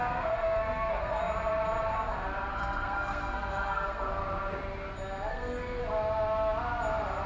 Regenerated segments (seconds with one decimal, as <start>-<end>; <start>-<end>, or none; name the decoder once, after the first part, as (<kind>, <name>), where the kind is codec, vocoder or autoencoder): 0.0-1.2 (codec, SNAC); 2.5-4.2; 5.3-5.8